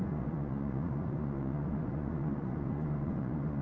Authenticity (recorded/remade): remade